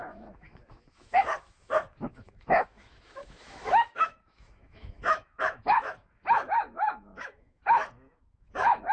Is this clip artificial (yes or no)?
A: yes